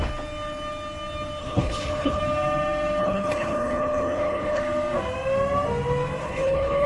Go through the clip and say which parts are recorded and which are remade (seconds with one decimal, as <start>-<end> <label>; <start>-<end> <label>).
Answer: 0.0-1.4 recorded; 1.4-2.2 remade; 2.2-3.0 recorded; 3.0-4.6 remade; 4.6-6.2 recorded; 6.2-6.9 remade